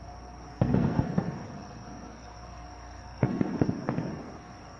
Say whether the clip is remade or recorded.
remade